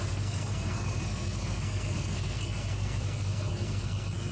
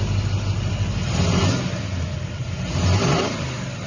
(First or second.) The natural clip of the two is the second